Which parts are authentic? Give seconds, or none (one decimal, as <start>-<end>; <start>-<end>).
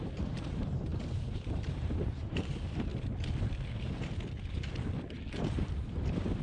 2.9-5.4